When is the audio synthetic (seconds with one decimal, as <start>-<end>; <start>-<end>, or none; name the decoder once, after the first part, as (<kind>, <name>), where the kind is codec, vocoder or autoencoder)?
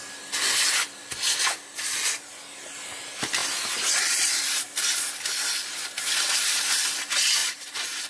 7.4-8.1 (vocoder, BigVGAN v2)